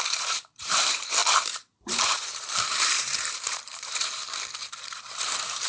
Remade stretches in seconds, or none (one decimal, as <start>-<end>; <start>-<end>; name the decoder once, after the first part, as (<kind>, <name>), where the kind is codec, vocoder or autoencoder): 0.0-4.2 (vocoder, BigVGAN v2); 4.9-5.7